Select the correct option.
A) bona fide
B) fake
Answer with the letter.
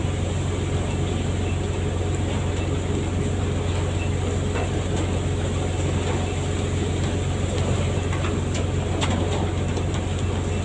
A